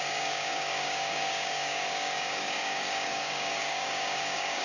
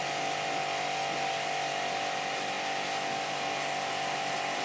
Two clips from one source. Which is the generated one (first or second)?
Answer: first